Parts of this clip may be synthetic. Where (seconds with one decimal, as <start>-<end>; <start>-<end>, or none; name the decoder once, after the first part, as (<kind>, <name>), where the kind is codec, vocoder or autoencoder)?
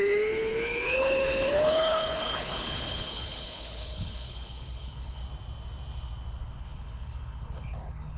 0.0-5.2 (codec, HILCodec); 6.6-8.2